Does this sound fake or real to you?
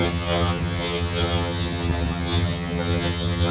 fake